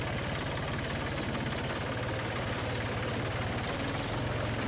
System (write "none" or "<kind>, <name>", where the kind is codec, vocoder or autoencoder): none